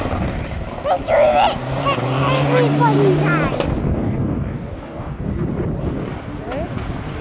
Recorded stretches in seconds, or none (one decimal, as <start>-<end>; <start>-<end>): 0.0-3.8; 5.3-7.2